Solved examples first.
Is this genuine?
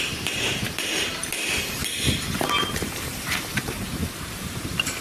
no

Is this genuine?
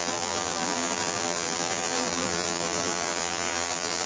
no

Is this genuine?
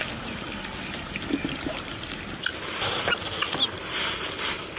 yes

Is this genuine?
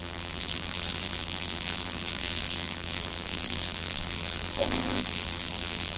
no